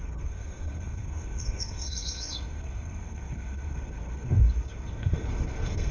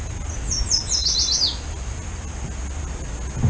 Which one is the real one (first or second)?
second